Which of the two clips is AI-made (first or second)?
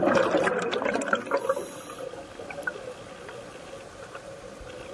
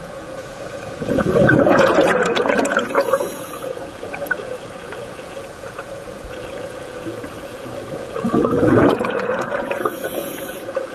second